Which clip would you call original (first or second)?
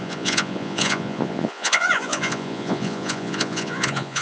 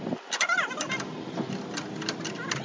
second